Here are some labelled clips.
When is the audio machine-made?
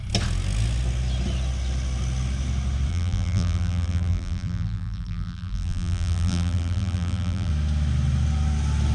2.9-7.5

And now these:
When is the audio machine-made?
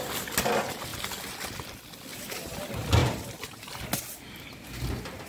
2.1-2.6; 3.0-3.6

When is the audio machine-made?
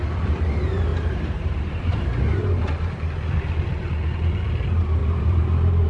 0.9-2.6; 5.0-5.9